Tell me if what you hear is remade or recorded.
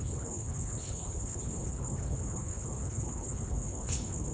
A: remade